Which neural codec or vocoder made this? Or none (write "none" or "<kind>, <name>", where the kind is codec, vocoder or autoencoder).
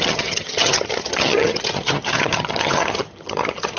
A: vocoder, HiFi-GAN